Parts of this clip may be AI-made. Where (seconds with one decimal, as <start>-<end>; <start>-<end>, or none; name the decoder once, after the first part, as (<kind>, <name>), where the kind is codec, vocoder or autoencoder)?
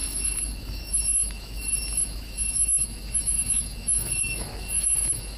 0.0-5.4 (autoencoder, DAC-VAE)